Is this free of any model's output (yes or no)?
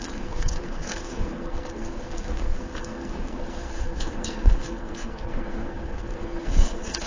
no